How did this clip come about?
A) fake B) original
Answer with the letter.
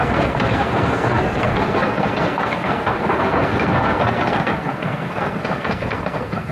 A